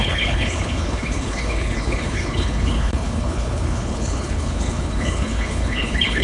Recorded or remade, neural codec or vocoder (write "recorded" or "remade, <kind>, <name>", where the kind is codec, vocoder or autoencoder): remade, codec, HILCodec